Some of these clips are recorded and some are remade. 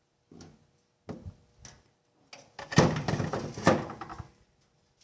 recorded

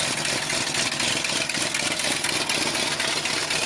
recorded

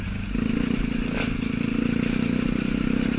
recorded